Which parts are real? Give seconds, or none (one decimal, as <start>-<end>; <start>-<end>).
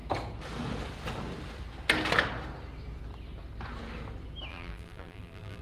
0.0-4.5